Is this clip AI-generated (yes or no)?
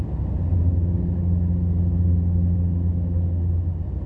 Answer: no